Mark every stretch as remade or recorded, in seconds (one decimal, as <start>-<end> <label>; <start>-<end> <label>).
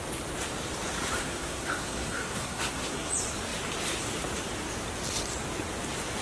0.0-1.2 recorded; 1.2-3.1 remade; 3.1-6.2 recorded